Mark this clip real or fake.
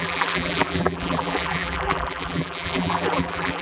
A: fake